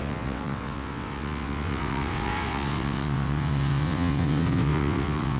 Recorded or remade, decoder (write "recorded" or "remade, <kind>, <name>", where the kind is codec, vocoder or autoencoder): remade, vocoder, WaveNeXt